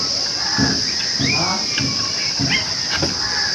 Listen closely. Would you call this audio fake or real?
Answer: real